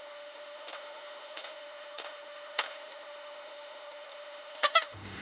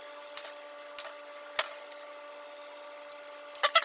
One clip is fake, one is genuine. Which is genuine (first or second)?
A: second